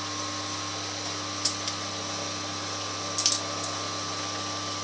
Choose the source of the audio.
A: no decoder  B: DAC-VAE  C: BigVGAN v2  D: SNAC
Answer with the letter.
A